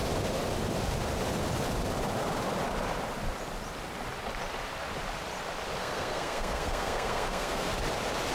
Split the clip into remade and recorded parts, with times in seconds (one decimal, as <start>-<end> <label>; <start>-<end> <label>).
0.0-5.8 recorded; 5.8-7.7 remade; 7.7-8.3 recorded